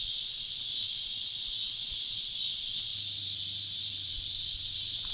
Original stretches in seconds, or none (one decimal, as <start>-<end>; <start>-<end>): none